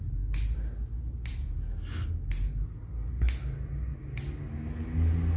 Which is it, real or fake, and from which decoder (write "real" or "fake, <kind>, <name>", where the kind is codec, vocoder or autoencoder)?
real